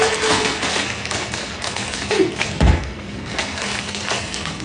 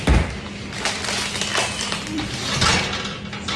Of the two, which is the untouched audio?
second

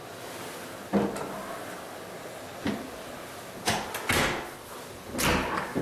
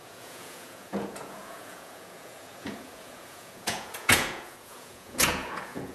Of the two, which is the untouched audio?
first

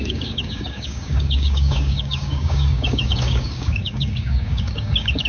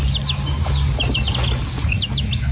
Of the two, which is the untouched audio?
second